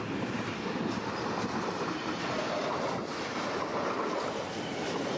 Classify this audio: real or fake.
real